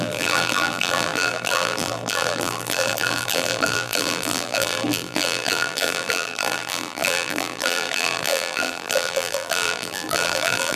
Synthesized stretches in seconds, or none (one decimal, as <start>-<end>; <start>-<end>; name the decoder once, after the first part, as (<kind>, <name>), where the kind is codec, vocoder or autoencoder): 0.0-10.8 (vocoder, BigVGAN v2)